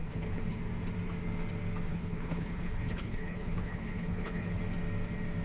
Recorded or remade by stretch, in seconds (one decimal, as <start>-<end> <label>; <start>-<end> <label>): 0.0-0.6 remade; 0.6-1.9 recorded; 1.9-4.6 remade; 4.6-5.4 recorded